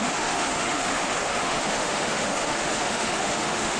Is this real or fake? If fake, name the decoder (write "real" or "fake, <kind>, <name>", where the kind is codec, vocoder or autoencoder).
fake, autoencoder, DAC-VAE